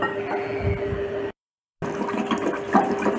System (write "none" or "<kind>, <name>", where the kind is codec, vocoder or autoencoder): none